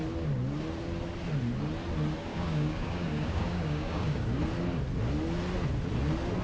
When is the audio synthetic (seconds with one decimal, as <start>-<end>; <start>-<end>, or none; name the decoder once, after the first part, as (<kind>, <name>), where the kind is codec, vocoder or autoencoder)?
2.3-4.4 (codec, DAC)